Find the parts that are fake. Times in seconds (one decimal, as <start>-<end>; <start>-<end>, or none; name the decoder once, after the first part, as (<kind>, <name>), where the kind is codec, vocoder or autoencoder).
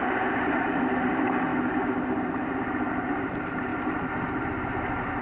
0.0-1.5 (vocoder, BigVGAN v2); 2.9-3.7; 4.3-5.2